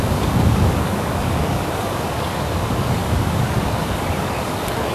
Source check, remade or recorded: remade